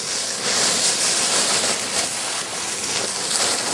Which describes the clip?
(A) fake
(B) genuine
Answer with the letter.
B